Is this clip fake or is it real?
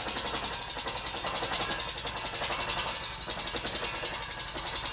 real